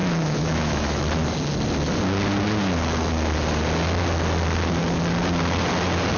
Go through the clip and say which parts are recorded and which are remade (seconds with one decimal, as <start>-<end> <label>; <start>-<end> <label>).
0.0-1.0 remade; 1.0-6.2 recorded